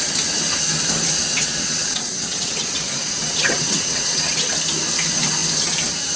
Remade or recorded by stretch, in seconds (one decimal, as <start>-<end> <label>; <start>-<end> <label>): 0.0-1.3 recorded; 1.3-4.5 remade; 4.5-6.2 recorded